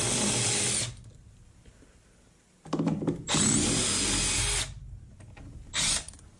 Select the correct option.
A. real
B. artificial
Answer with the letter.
A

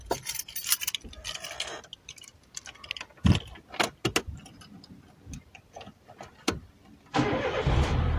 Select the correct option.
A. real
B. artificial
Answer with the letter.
A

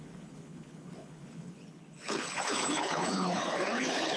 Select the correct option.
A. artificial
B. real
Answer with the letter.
A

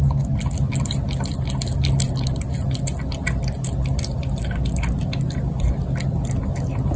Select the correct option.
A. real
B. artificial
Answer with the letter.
A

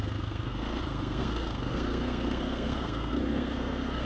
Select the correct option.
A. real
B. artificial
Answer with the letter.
B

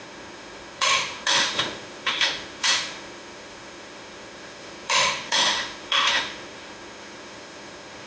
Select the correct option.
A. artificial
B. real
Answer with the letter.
A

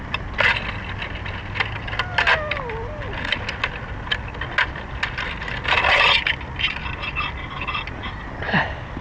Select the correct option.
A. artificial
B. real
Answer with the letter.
B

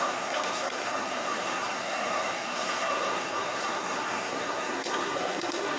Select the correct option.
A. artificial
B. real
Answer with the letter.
A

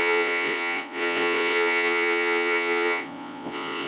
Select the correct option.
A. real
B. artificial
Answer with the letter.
B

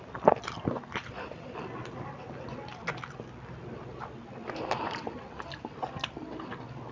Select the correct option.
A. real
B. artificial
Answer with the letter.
A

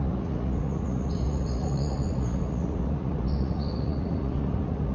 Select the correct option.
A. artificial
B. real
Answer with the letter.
A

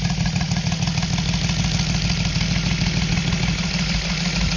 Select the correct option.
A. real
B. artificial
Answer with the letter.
A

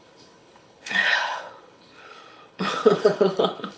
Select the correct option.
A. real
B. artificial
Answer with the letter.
B